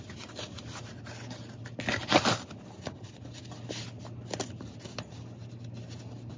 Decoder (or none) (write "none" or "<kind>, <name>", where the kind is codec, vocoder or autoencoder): none